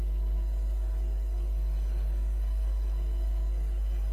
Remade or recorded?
remade